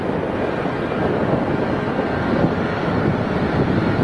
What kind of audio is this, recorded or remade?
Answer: recorded